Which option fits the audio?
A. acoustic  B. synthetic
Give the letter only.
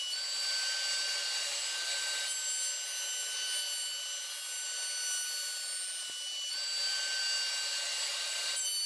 A